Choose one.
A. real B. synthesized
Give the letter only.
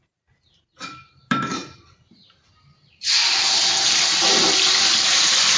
B